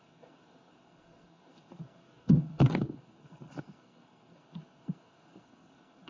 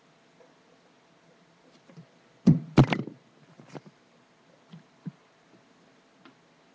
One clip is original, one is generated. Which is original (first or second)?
second